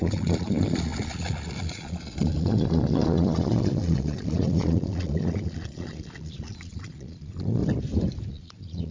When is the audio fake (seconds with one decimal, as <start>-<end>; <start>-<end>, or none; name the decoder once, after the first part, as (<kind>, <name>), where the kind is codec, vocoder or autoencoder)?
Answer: 0.0-7.6 (vocoder, Vocos); 8.3-8.9